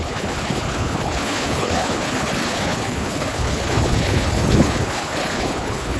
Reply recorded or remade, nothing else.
remade